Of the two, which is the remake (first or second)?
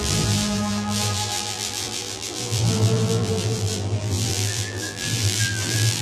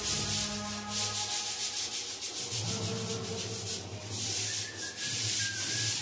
first